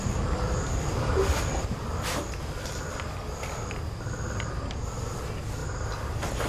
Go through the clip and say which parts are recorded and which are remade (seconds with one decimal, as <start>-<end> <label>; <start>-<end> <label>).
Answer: 0.0-6.5 recorded